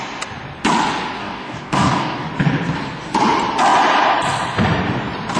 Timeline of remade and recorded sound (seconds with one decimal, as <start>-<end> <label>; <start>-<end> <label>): 0.0-1.2 recorded; 1.2-2.3 remade; 2.3-5.4 recorded